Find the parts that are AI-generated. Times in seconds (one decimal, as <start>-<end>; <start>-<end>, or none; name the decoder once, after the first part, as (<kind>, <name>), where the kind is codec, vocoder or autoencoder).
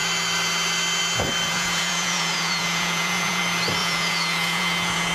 1.5-3.4 (vocoder, Vocos); 3.8-5.1